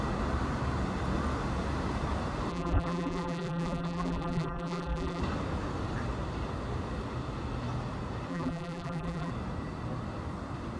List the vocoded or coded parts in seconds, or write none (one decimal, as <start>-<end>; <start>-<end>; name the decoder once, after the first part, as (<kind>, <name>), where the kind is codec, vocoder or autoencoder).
2.5-5.2 (vocoder, BigVGAN v2); 8.3-9.3